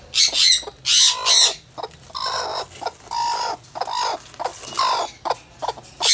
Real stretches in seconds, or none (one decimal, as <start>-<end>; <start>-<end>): 0.0-6.1